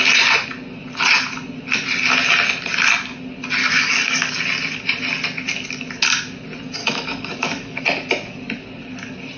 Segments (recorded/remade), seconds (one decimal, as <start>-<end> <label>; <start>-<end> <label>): 0.0-3.6 recorded; 3.6-4.4 remade; 4.4-6.8 recorded; 6.8-7.8 remade; 7.8-9.4 recorded